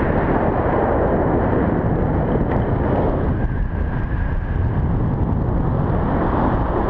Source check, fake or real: real